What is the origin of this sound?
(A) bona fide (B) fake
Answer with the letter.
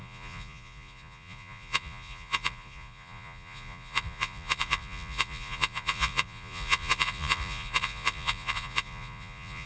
B